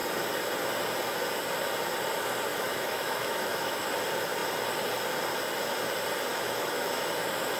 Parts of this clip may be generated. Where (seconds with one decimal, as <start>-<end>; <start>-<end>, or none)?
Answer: 2.5-3.9; 6.3-7.0